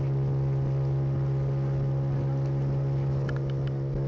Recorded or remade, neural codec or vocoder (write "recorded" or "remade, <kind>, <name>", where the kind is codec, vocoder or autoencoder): recorded